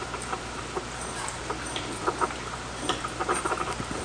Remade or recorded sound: remade